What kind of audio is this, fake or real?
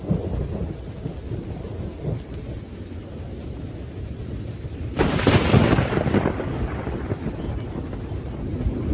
real